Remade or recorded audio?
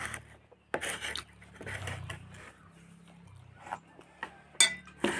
recorded